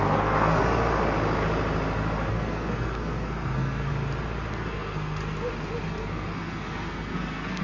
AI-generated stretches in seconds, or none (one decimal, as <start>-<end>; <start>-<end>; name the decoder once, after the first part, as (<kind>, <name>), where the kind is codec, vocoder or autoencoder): 0.0-0.6 (codec, SNAC); 2.3-3.9; 4.5-5.2; 5.9-7.6